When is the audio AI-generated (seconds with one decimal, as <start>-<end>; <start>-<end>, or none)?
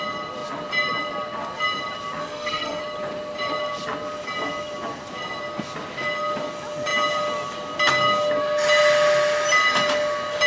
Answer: 2.2-2.8